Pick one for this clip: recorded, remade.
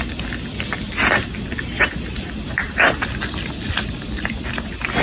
recorded